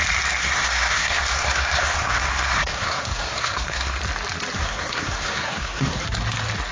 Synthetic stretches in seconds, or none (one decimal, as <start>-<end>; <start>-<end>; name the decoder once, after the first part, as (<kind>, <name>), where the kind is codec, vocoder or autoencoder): 0.4-4.0 (codec, SNAC); 4.6-6.0